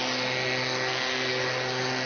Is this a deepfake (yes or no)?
no